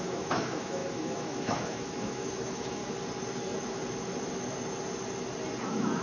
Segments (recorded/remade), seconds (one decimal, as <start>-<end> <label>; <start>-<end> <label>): 0.0-2.8 remade; 2.8-5.6 recorded; 5.6-6.0 remade